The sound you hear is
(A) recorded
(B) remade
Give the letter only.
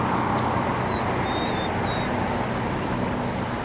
A